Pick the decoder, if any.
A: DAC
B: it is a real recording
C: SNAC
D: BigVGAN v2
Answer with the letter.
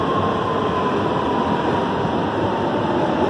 B